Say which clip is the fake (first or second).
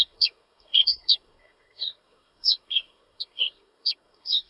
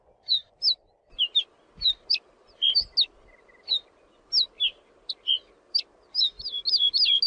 first